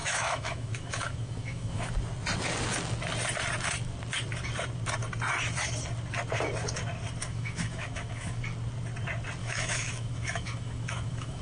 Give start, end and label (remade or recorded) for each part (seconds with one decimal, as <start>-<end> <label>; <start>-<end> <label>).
0.0-1.9 remade; 1.9-7.2 recorded; 7.2-8.4 remade; 8.4-9.4 recorded; 9.4-11.4 remade